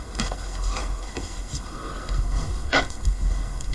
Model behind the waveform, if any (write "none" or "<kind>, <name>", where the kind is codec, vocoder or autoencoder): codec, SNAC